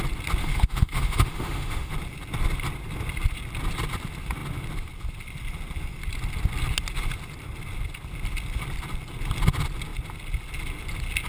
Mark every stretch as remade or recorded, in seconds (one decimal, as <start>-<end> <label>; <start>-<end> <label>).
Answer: 0.0-0.4 recorded; 0.4-1.9 remade; 1.9-11.3 recorded

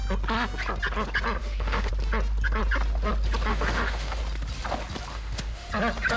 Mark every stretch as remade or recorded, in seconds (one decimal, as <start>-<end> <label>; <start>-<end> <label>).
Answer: 0.0-1.4 recorded; 1.4-1.9 remade; 1.9-3.5 recorded; 3.5-4.2 remade; 4.2-5.1 recorded; 5.1-5.7 remade; 5.7-6.2 recorded

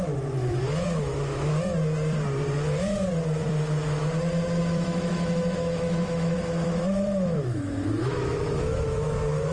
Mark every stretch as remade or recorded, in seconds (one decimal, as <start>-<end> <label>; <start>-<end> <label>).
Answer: 0.0-1.5 remade; 1.5-4.6 recorded; 4.6-9.5 remade